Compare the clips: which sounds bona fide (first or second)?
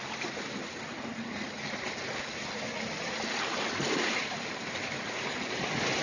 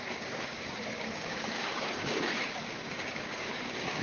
first